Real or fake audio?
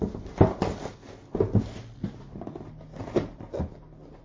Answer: real